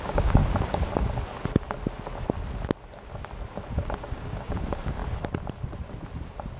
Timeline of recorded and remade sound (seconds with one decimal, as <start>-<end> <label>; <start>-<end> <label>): 0.0-0.4 remade; 0.4-4.0 recorded; 4.0-5.0 remade; 5.0-6.6 recorded